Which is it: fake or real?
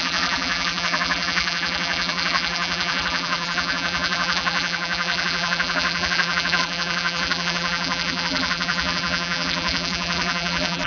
fake